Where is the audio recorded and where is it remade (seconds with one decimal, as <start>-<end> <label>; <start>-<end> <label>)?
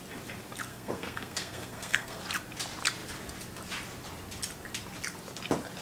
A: 0.0-0.7 recorded; 0.7-2.2 remade; 2.2-5.8 recorded